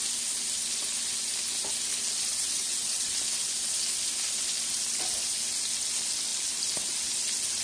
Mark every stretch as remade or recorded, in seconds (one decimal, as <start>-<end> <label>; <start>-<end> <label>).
0.0-2.3 recorded; 2.3-3.1 remade; 3.1-7.6 recorded